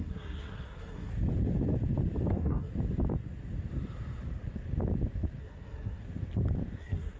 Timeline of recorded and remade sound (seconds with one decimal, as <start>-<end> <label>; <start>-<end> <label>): 0.0-1.1 remade; 1.1-2.3 recorded; 2.3-2.7 remade; 2.7-5.4 recorded; 5.4-6.0 remade; 6.0-6.8 recorded; 6.8-7.2 remade